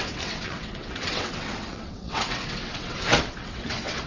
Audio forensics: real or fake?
fake